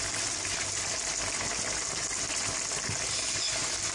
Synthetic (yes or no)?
no